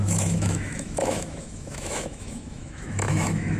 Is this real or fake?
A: fake